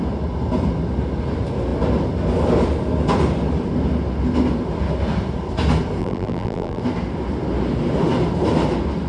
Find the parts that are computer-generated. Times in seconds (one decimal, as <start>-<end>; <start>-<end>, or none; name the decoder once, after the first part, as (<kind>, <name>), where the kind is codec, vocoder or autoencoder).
6.0-6.8 (vocoder, BigVGAN v2)